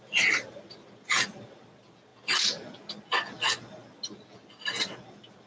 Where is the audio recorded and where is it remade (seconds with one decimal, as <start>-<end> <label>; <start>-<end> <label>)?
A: 0.0-5.5 recorded